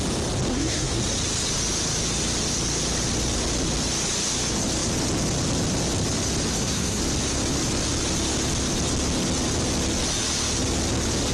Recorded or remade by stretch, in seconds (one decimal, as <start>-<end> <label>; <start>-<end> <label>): 0.0-0.5 recorded; 0.5-1.0 remade; 1.0-6.5 recorded; 6.5-7.0 remade; 7.0-11.3 recorded